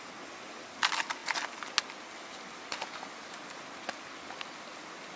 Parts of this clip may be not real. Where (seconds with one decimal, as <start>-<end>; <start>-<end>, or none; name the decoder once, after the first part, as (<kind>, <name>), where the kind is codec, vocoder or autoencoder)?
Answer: none

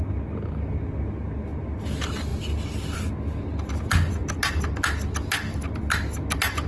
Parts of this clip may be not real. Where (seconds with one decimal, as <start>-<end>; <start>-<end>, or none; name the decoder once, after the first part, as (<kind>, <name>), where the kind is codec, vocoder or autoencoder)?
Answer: none

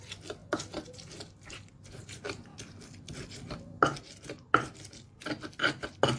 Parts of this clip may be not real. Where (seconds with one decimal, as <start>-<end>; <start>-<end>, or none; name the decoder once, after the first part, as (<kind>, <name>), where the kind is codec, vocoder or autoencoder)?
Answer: none

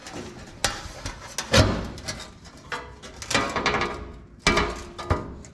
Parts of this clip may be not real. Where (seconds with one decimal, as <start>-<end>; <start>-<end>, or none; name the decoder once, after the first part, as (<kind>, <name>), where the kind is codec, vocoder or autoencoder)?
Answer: none

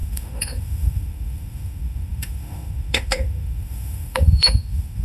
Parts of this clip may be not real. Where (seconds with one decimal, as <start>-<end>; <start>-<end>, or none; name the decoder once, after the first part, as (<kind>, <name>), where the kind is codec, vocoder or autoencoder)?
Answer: 0.0-5.0 (autoencoder, DAC-VAE)